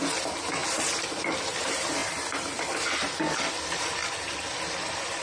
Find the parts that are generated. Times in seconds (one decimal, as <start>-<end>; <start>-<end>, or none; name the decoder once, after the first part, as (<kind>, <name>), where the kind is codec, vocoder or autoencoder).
0.0-2.0 (vocoder, BigVGAN v2); 3.5-4.0; 4.5-5.2